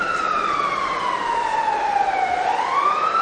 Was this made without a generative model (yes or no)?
no